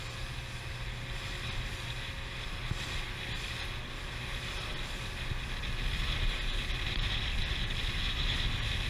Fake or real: real